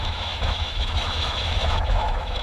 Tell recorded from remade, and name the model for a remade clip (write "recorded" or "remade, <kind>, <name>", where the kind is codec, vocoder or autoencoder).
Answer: remade, autoencoder, DAC-VAE